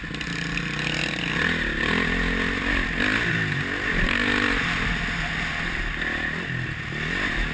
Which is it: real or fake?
real